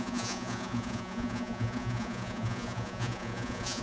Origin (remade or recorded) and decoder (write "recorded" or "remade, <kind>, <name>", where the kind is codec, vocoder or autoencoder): remade, vocoder, Vocos